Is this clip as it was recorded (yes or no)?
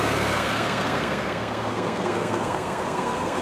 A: no